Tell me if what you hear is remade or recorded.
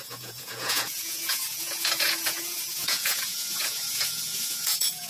remade